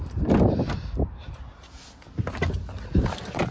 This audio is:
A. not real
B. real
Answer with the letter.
B